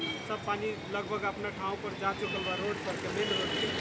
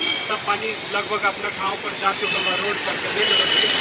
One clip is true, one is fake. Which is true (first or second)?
first